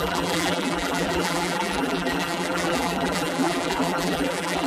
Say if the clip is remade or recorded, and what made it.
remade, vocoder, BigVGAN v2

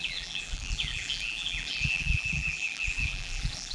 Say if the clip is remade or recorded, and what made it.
remade, vocoder, BigVGAN v2